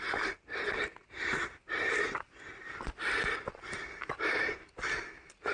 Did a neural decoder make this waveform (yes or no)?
no